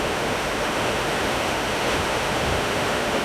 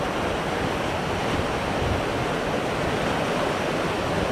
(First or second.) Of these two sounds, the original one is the second